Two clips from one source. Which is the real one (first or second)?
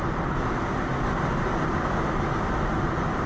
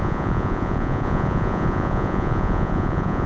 first